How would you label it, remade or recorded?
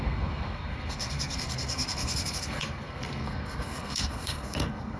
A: remade